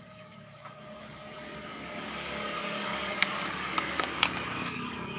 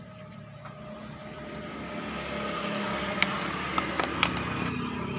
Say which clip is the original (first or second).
second